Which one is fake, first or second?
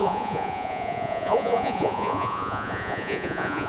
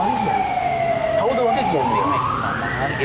first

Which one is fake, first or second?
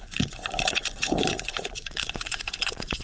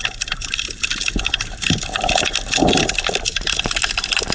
first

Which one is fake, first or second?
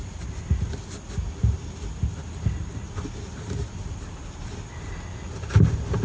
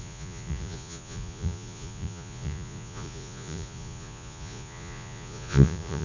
second